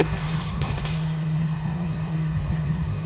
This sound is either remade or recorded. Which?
remade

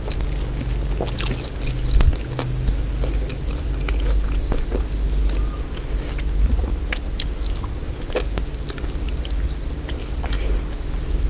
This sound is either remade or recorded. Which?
recorded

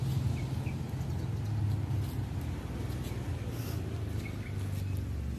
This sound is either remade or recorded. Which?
recorded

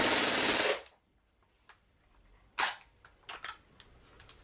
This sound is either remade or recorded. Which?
recorded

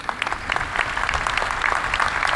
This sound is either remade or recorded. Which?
recorded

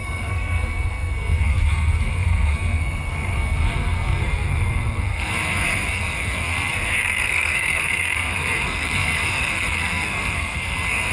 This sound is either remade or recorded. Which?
remade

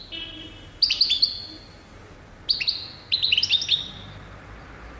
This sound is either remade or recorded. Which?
recorded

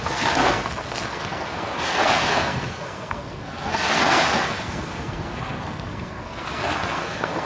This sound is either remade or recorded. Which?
remade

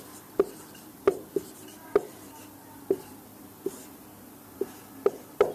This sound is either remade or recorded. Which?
remade